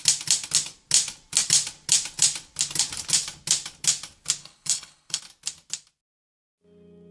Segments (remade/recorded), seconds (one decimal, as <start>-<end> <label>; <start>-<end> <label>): 0.0-4.4 recorded; 4.4-5.2 remade; 5.2-7.1 recorded